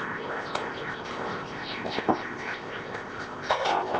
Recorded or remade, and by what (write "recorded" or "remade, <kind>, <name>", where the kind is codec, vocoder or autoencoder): remade, codec, ZipCodec